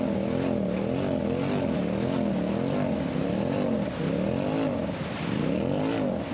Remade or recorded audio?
recorded